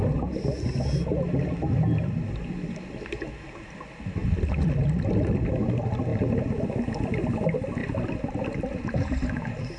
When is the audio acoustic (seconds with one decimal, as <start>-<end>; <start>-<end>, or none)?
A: 0.0-4.2; 5.3-6.1; 6.7-7.8